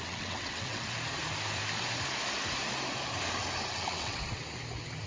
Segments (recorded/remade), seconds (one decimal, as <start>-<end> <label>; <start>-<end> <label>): 0.0-0.8 remade; 0.8-3.7 recorded; 3.7-4.4 remade; 4.4-5.1 recorded